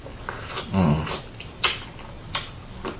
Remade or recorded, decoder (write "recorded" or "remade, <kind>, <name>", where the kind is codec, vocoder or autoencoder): recorded